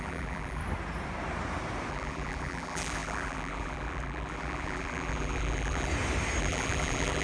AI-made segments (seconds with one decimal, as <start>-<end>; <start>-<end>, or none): 0.0-0.6; 1.9-5.9; 6.4-7.2